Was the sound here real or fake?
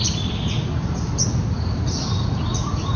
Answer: real